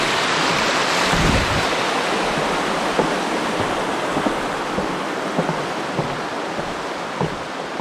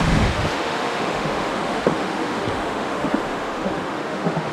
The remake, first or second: second